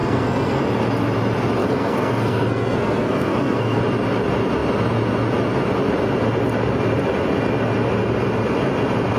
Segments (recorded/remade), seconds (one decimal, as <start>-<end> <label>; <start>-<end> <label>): 0.0-0.6 remade; 0.6-1.6 recorded; 1.6-3.8 remade; 3.8-9.2 recorded